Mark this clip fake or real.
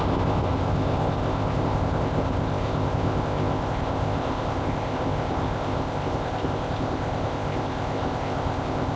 fake